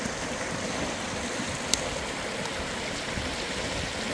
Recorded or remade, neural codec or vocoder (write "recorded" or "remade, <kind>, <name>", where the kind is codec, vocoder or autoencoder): recorded